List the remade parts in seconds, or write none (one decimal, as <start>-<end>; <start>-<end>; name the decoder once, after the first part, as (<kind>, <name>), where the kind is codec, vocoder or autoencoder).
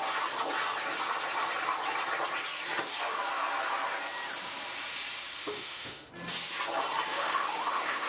5.4-6.1 (autoencoder, DAC-VAE); 7.1-8.1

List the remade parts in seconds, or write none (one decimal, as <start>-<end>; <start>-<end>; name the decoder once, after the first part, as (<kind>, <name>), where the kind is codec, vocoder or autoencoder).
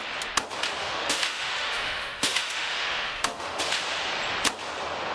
0.8-3.6 (autoencoder, DAC-VAE)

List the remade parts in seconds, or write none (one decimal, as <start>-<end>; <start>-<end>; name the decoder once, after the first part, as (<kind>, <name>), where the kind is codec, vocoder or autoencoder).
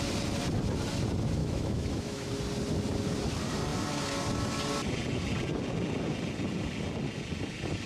1.4-2.3 (autoencoder, DAC-VAE)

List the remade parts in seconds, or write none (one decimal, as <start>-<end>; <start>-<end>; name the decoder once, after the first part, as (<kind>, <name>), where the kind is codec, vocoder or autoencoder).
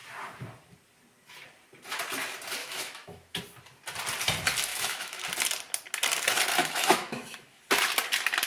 2.6-3.4 (autoencoder, DAC-VAE); 4.7-5.2; 6.6-7.6